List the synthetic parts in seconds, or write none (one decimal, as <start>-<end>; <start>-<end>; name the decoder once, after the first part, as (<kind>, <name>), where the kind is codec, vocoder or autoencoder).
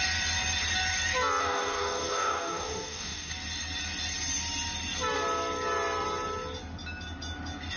1.4-3.3 (codec, DAC)